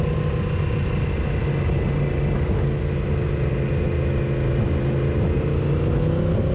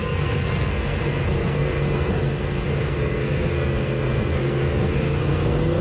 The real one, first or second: first